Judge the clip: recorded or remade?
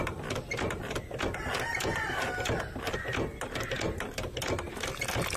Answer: recorded